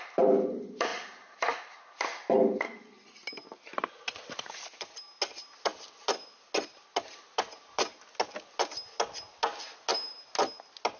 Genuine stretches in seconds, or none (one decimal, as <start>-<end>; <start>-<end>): 0.0-11.0